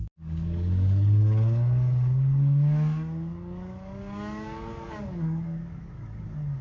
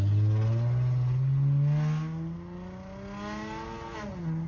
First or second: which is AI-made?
first